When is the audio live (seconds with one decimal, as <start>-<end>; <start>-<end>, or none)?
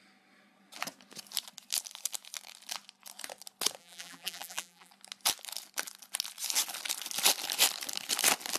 0.0-3.8; 4.9-8.6